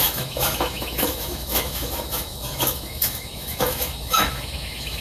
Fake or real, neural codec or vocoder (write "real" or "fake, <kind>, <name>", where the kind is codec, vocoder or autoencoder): fake, autoencoder, DAC-VAE